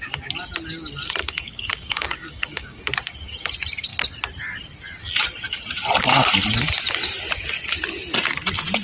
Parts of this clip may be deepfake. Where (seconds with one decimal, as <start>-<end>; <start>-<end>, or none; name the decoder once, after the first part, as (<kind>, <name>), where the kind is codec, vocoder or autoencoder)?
1.2-2.8 (codec, DAC)